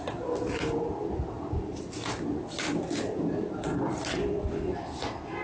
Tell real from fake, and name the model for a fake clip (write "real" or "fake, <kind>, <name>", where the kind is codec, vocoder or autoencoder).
real